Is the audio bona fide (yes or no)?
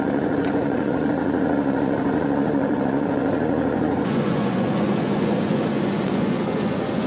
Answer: no